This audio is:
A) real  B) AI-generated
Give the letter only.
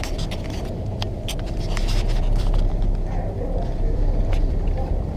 B